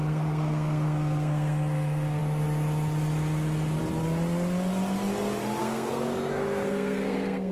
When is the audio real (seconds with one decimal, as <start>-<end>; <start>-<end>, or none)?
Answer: 2.2-5.6